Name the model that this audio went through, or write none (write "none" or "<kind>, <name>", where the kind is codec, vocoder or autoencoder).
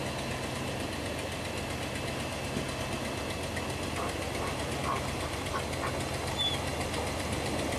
none